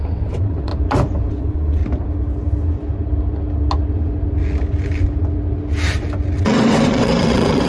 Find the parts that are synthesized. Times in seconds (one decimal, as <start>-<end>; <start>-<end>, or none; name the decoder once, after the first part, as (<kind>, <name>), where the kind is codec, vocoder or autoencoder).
0.0-0.7 (vocoder, WaveNeXt); 1.3-1.8; 6.4-7.7